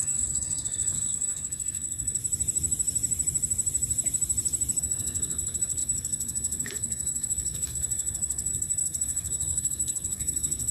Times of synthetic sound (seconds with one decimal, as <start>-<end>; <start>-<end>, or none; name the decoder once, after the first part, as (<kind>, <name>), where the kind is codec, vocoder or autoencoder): 0.0-2.2 (codec, SNAC); 4.8-10.7

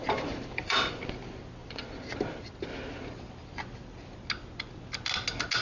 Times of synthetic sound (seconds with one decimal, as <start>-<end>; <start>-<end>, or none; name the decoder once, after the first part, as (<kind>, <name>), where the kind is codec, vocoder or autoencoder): 0.0-1.0 (vocoder, BigVGAN v2); 1.6-2.5

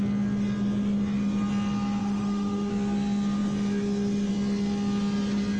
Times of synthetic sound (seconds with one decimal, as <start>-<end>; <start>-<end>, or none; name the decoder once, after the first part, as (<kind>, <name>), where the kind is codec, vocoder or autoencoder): 2.0-2.7 (autoencoder, DAC-VAE)